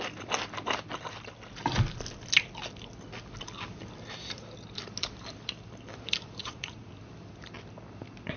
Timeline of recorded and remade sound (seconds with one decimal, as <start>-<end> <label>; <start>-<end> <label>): 0.0-6.4 recorded; 6.4-6.9 remade; 6.9-8.4 recorded